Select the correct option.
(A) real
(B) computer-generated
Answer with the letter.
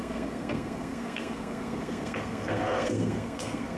B